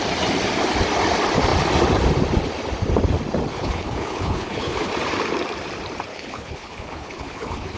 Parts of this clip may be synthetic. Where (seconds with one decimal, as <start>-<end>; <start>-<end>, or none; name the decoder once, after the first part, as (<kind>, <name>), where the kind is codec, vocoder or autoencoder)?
3.6-4.9 (codec, HILCodec); 6.1-7.8